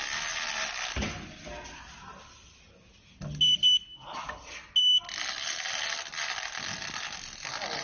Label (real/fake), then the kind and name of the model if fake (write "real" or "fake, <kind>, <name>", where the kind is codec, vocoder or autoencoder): real